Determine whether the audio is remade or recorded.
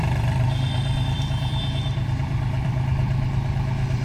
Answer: remade